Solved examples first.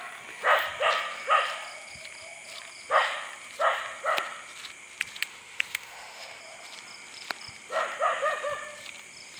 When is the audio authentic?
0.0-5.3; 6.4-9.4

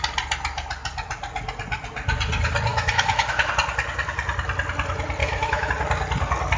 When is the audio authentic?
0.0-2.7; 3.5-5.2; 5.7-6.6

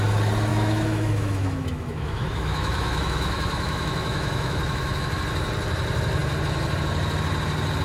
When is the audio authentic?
0.0-0.5; 5.2-7.8

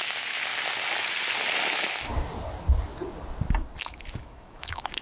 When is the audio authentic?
0.5-1.7; 2.1-3.8